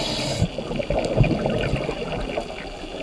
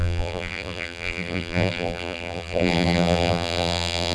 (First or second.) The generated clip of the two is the second